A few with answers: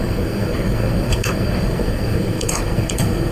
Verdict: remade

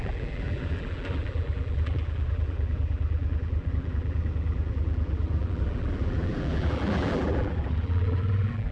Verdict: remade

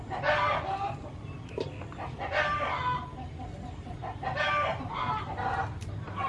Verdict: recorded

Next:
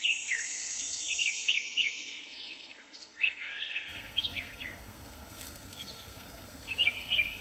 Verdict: remade